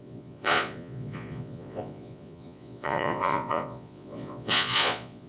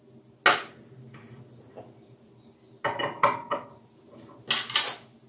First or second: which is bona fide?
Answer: second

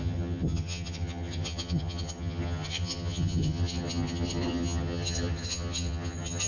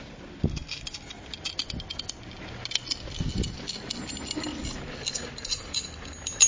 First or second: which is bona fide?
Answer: second